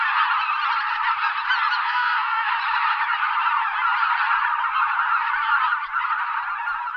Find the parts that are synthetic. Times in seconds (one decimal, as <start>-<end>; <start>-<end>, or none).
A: 1.8-2.5